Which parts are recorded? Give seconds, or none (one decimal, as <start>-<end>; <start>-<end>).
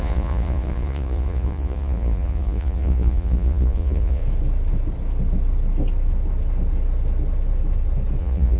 4.2-8.2